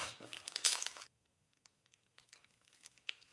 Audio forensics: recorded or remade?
remade